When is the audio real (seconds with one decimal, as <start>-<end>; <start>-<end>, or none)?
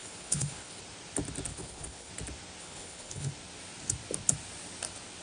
0.8-1.5; 2.1-2.6; 3.3-5.2